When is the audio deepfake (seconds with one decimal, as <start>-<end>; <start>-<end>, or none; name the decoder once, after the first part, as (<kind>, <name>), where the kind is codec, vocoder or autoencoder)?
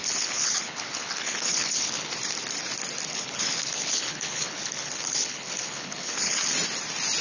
0.0-2.1 (codec, HILCodec); 3.1-6.5